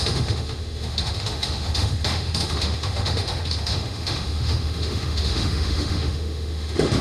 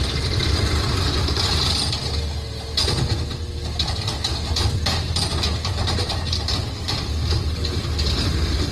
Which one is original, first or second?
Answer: second